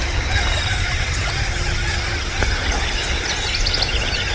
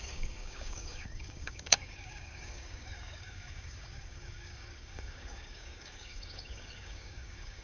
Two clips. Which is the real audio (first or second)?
first